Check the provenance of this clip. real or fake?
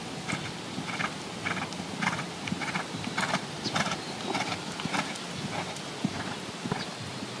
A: real